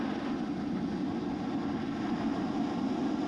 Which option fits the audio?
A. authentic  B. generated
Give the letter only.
A